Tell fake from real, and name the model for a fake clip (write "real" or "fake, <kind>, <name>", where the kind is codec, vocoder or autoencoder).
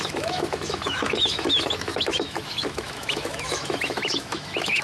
fake, autoencoder, DAC-VAE